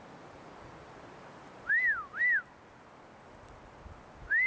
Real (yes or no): yes